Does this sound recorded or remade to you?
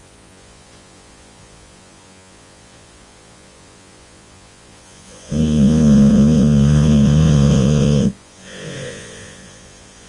remade